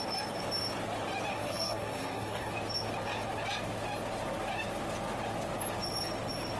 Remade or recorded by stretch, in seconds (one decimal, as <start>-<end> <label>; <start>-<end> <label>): 0.0-1.3 recorded; 1.3-2.5 remade; 2.5-6.6 recorded